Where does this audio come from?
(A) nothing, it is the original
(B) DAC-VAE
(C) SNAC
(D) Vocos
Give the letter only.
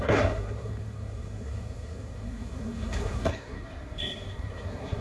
C